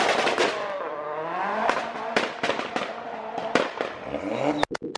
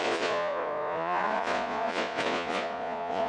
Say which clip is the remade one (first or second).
second